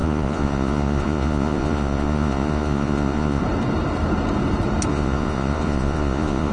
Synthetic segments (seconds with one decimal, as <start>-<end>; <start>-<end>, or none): 0.0-3.4; 4.9-6.5